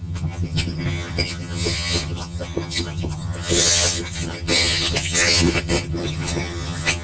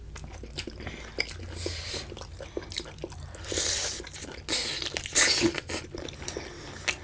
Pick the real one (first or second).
second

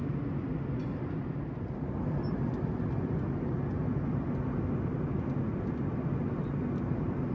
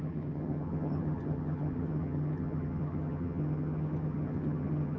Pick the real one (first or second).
first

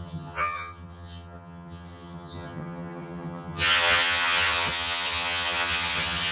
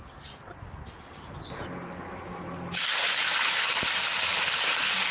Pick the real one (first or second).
second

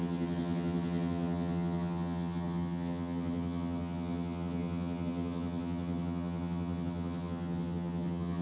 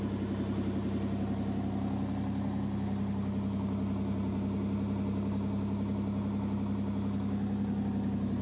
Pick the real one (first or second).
second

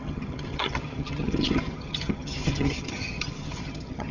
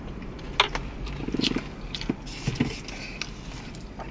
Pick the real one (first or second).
second